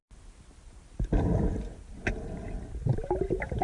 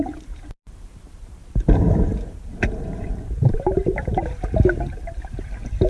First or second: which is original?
first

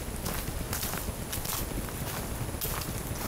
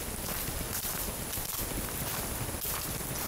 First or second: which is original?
first